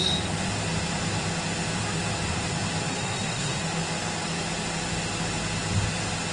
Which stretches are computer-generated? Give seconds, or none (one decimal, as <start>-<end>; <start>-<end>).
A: 2.9-3.6